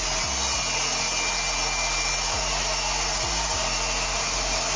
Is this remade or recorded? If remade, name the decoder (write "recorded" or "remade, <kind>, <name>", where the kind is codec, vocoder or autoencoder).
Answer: recorded